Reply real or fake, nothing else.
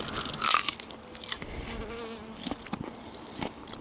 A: real